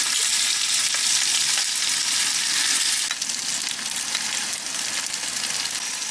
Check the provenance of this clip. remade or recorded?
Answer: recorded